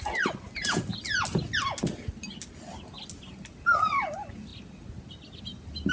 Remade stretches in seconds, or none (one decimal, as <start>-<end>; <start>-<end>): none